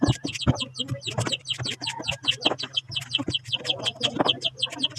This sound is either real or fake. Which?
real